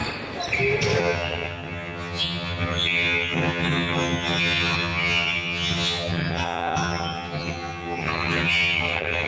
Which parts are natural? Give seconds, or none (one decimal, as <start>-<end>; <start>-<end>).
0.0-1.0